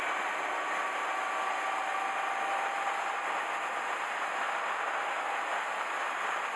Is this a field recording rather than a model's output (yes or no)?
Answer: yes